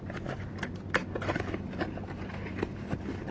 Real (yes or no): yes